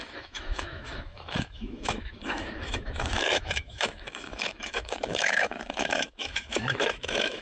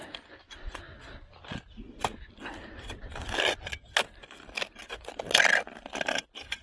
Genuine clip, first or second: second